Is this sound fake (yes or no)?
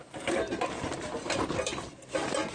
no